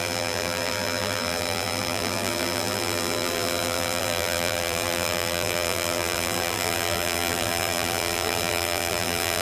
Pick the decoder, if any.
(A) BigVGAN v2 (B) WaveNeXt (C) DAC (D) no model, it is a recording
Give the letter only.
A